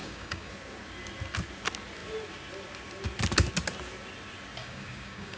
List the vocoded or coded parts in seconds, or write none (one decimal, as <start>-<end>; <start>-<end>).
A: 0.0-0.5; 4.6-5.4